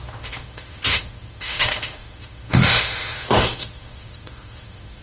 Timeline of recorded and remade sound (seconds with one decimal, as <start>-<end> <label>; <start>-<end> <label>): 0.0-5.0 remade